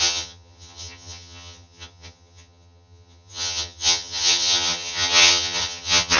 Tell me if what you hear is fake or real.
fake